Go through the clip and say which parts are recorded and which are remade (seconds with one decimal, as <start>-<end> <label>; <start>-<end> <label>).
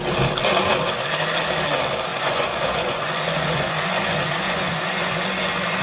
0.0-2.1 recorded; 2.1-5.8 remade